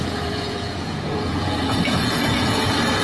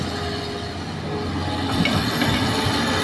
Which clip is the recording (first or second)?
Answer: second